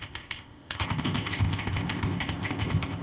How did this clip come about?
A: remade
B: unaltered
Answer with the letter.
A